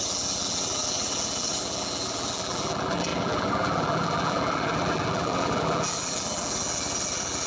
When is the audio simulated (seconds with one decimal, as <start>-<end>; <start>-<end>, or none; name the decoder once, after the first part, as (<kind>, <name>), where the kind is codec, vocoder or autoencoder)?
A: 0.0-7.5 (vocoder, BigVGAN v2)